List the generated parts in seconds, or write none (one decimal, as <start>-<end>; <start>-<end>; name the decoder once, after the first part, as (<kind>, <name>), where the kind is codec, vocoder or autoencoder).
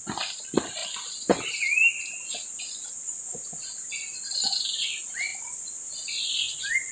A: none